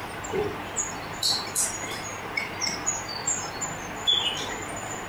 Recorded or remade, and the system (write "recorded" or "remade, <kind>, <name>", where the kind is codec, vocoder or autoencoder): recorded